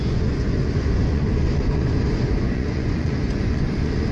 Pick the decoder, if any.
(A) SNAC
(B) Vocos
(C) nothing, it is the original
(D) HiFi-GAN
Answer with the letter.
B